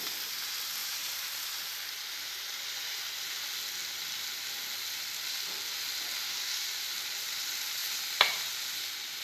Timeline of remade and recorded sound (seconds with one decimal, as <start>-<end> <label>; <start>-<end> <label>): 0.0-0.8 recorded; 0.8-1.6 remade; 1.6-6.2 recorded; 6.2-6.7 remade; 6.7-7.8 recorded; 7.8-8.5 remade; 8.5-9.2 recorded